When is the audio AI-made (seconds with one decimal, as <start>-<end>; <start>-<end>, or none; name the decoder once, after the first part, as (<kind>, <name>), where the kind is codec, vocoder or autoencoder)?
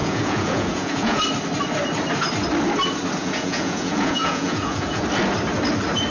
0.0-1.2 (vocoder, Vocos); 3.2-5.0